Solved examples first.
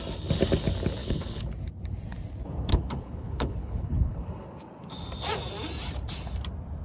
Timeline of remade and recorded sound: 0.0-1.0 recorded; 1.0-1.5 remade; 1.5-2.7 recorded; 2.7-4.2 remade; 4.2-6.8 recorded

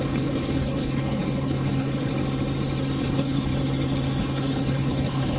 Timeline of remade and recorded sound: 0.0-2.1 remade; 2.1-3.0 recorded; 3.0-3.5 remade; 3.5-4.2 recorded; 4.2-5.4 remade

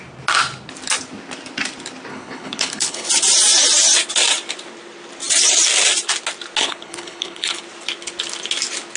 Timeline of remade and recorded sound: 0.0-2.1 recorded; 2.1-3.1 remade; 3.1-6.6 recorded; 6.6-7.6 remade; 7.6-9.0 recorded

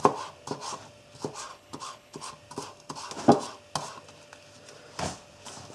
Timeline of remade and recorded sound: 0.0-1.5 recorded; 1.5-2.3 remade; 2.3-5.7 recorded

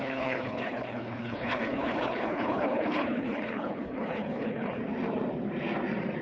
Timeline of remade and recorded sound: 0.0-4.8 remade; 4.8-6.2 recorded

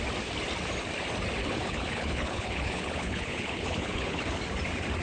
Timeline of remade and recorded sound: 0.0-1.4 recorded; 1.4-4.4 remade; 4.4-5.0 recorded